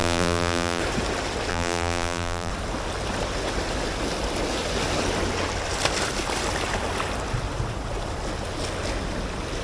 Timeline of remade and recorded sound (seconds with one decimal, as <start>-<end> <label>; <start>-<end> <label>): 0.0-0.8 remade; 0.8-1.5 recorded; 1.5-2.5 remade; 2.5-9.6 recorded